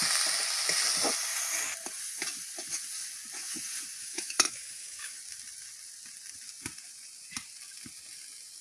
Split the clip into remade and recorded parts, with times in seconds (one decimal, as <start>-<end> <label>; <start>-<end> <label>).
0.0-4.0 recorded; 4.0-5.2 remade; 5.2-8.6 recorded